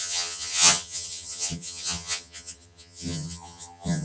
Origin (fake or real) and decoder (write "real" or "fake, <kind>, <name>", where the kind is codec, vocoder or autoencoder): fake, vocoder, HiFi-GAN